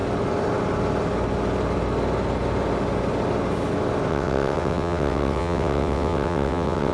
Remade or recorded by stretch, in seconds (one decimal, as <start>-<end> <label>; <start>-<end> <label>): 0.0-4.1 recorded; 4.1-6.9 remade